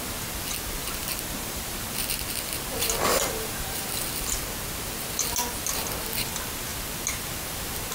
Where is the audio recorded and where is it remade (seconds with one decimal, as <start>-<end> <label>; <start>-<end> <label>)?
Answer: 0.0-0.8 recorded; 0.8-1.6 remade; 1.6-3.1 recorded; 3.1-3.9 remade; 3.9-7.9 recorded